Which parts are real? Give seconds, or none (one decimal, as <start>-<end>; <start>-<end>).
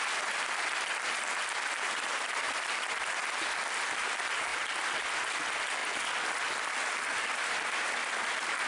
0.0-8.7